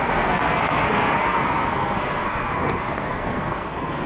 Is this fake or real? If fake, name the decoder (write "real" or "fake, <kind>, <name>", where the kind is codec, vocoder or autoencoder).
fake, codec, SNAC